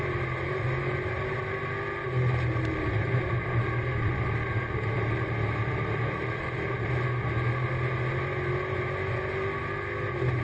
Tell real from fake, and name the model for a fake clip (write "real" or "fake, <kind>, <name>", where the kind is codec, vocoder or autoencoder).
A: real